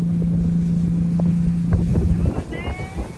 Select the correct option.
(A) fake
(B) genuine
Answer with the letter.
B